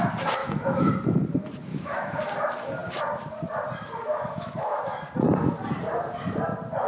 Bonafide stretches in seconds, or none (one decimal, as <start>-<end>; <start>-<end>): 0.0-0.4; 0.9-1.7; 2.2-4.1; 5.0-6.9